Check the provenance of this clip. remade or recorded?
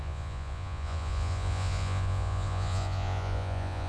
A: remade